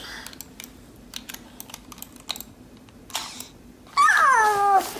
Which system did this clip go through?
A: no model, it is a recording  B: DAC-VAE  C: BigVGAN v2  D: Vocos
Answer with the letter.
A